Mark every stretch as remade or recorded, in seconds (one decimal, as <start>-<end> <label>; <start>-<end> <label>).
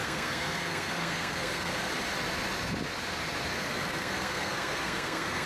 0.0-1.9 remade; 1.9-3.5 recorded; 3.5-5.5 remade